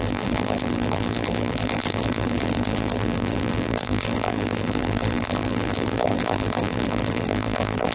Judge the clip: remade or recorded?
remade